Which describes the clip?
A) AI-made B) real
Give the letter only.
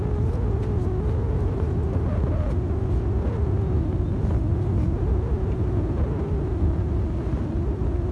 B